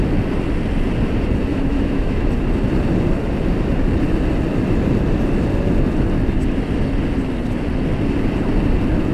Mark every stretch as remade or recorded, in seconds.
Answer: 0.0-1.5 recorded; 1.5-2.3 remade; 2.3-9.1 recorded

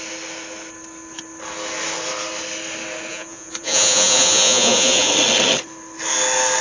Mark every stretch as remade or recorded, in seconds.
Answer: 0.0-3.1 recorded; 3.1-5.1 remade; 5.1-6.6 recorded

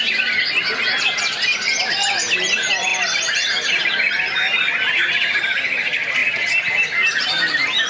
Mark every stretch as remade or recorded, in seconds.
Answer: 0.0-7.9 recorded

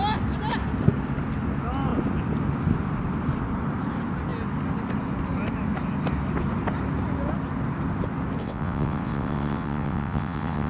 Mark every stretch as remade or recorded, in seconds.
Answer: 0.0-8.4 recorded; 8.4-10.7 remade

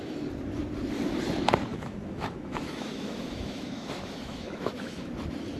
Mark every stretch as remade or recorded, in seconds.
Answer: 0.0-1.7 recorded; 1.7-5.1 remade; 5.1-5.6 recorded

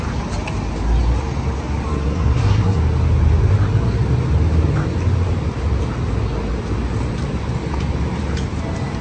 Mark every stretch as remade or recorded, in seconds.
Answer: 0.0-1.9 recorded; 1.9-2.8 remade; 2.8-9.0 recorded

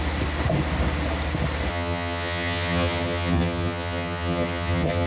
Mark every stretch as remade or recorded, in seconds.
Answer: 0.0-1.7 recorded; 1.7-5.1 remade